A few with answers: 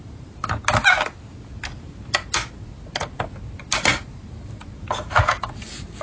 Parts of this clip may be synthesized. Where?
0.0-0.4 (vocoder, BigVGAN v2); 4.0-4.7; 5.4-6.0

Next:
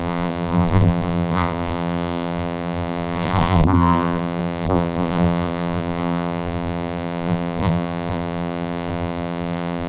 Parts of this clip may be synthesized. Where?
0.0-9.9 (vocoder, BigVGAN v2)

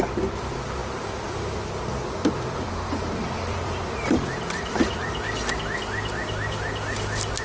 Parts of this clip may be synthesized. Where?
0.8-5.2 (vocoder, BigVGAN v2)